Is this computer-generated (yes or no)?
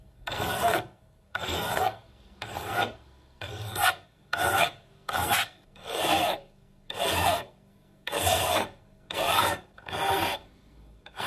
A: yes